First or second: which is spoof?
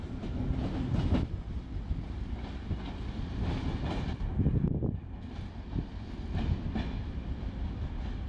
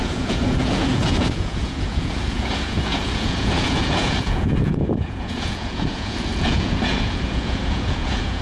second